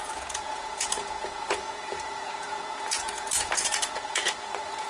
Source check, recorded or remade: remade